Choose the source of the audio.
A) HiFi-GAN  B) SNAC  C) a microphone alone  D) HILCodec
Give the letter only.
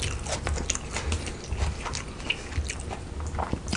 C